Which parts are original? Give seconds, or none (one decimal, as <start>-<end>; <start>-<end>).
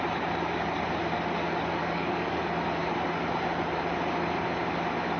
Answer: 0.0-1.8; 2.4-5.2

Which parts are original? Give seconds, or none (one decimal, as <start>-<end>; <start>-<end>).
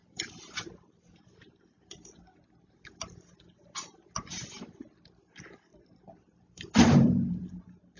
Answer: 2.7-5.7; 7.4-8.0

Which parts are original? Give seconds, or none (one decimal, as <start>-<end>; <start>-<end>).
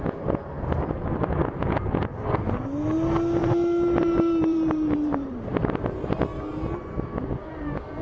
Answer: 0.0-3.4; 5.7-8.0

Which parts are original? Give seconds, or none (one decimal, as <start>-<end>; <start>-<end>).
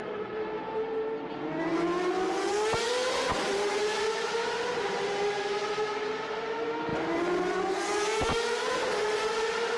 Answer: 0.0-9.8